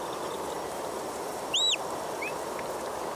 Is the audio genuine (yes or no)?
yes